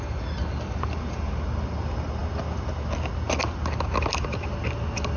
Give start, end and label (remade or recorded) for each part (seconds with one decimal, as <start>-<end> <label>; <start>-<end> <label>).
0.0-5.2 recorded

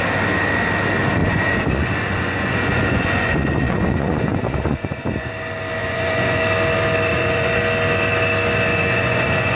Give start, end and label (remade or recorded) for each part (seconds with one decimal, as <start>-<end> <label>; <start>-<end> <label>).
0.0-1.2 recorded; 1.2-5.3 remade; 5.3-5.8 recorded; 5.8-6.4 remade; 6.4-7.1 recorded; 7.1-7.6 remade; 7.6-8.7 recorded; 8.7-9.6 remade

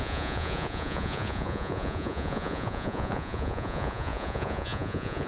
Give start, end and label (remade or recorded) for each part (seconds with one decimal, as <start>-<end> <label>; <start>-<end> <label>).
0.0-5.3 remade

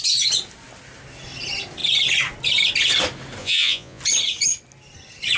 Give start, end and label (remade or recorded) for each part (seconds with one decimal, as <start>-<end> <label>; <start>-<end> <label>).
0.0-3.4 recorded; 3.4-4.0 remade; 4.0-5.4 recorded

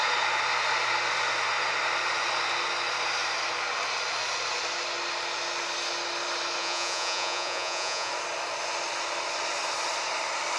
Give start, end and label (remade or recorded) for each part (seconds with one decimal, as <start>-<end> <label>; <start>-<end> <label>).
0.0-6.6 recorded; 6.6-8.1 remade; 8.1-10.6 recorded

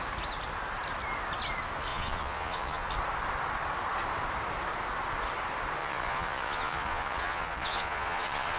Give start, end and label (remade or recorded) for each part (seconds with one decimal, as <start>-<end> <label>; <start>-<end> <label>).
0.0-1.9 recorded; 1.9-2.9 remade; 2.9-5.8 recorded; 5.8-8.6 remade

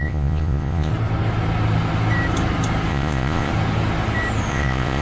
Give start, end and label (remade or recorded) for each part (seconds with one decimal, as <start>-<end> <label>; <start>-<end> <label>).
0.0-0.9 remade; 0.9-2.9 recorded; 2.9-3.5 remade; 3.5-4.5 recorded; 4.5-5.0 remade

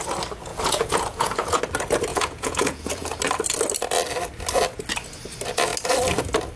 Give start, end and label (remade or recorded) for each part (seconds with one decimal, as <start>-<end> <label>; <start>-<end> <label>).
0.0-0.5 recorded; 0.5-1.6 remade; 1.6-2.1 recorded; 2.1-3.2 remade; 3.2-6.6 recorded